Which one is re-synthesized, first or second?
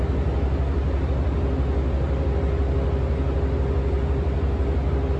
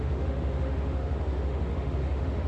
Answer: second